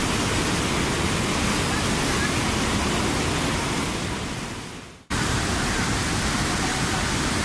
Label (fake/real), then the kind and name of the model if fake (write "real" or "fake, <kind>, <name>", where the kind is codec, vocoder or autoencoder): real